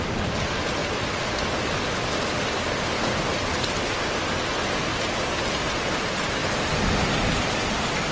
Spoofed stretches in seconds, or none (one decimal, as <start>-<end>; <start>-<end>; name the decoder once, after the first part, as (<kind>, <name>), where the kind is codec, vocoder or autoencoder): none